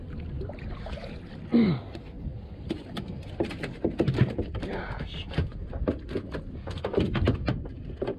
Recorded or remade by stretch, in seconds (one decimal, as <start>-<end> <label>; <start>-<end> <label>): 0.0-8.2 recorded

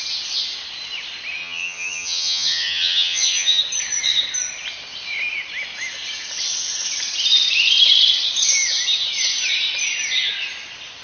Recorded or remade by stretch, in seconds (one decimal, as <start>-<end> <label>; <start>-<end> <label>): 0.0-1.4 recorded; 1.4-3.6 remade; 3.6-11.0 recorded

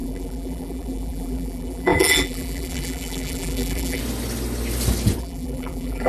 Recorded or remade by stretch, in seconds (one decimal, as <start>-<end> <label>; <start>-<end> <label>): 0.0-4.0 remade; 4.0-5.2 recorded; 5.2-6.1 remade

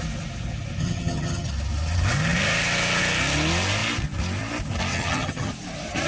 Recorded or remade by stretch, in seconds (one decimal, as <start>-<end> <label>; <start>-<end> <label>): 0.0-0.8 recorded; 0.8-1.5 remade; 1.5-4.9 recorded; 4.9-5.5 remade; 5.5-6.1 recorded

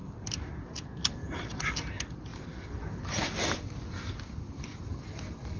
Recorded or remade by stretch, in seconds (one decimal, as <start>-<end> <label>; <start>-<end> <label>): 0.0-0.5 remade; 0.5-2.3 recorded; 2.3-3.0 remade; 3.0-4.7 recorded; 4.7-5.6 remade